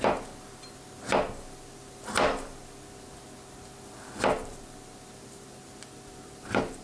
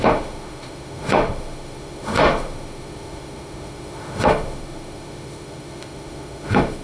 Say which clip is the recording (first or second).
first